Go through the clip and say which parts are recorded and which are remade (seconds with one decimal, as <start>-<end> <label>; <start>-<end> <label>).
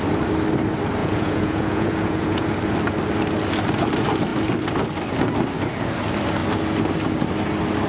0.0-1.0 recorded; 1.0-2.5 remade; 2.5-7.9 recorded